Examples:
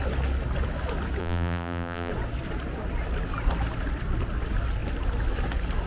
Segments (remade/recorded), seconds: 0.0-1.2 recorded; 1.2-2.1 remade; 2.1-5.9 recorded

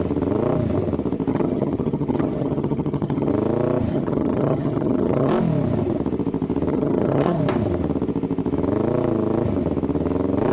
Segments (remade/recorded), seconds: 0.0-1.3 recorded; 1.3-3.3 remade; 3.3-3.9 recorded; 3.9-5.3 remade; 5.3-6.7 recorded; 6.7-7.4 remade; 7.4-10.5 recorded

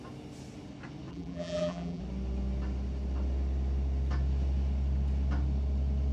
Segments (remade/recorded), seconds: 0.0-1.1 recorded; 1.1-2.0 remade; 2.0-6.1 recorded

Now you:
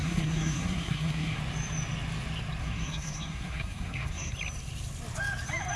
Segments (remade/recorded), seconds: 0.0-1.4 remade; 1.4-2.6 recorded; 2.6-4.3 remade; 4.3-5.8 recorded

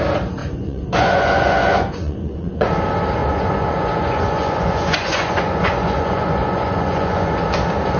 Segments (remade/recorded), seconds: 0.0-0.4 recorded; 0.4-2.7 remade; 2.7-3.2 recorded; 3.2-7.4 remade; 7.4-8.0 recorded

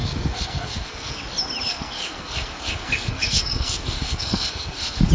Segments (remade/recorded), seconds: 0.0-1.2 remade; 1.2-1.7 recorded; 1.7-5.1 remade

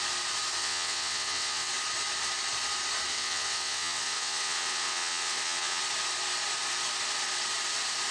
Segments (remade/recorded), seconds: 0.0-0.6 recorded; 0.6-1.7 remade; 1.7-3.1 recorded; 3.1-5.8 remade; 5.8-8.1 recorded

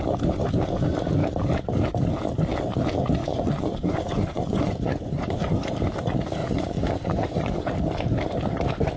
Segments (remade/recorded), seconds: 0.0-3.2 recorded; 3.2-5.7 remade; 5.7-6.4 recorded; 6.4-7.6 remade; 7.6-9.0 recorded